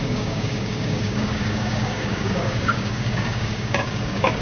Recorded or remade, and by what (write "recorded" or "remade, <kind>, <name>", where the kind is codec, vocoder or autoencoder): remade, codec, DAC